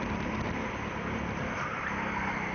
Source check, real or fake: real